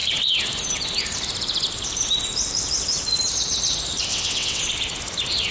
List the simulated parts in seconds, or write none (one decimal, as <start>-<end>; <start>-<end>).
4.1-4.6